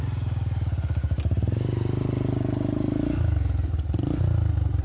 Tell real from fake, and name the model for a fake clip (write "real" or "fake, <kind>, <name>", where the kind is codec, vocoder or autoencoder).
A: real